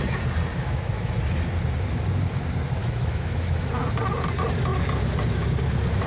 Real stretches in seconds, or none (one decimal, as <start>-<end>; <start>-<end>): 0.0-0.5; 1.1-2.8; 3.7-6.1